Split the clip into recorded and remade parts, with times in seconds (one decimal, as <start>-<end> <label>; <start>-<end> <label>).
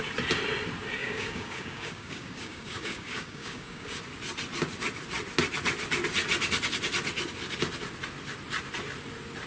0.0-1.0 recorded; 1.0-4.0 remade; 4.0-9.5 recorded